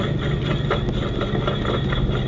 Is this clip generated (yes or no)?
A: no